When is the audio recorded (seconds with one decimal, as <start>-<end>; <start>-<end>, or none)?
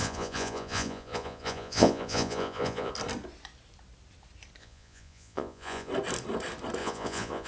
2.9-4.6; 5.9-6.8